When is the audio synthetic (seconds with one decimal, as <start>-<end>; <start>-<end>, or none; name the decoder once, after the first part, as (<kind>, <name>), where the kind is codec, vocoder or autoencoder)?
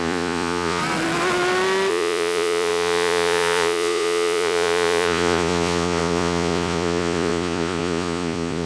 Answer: 0.0-0.8 (vocoder, Vocos); 1.9-8.7